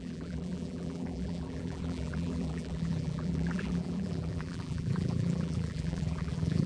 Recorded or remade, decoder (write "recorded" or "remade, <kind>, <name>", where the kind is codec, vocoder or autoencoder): remade, vocoder, BigVGAN v2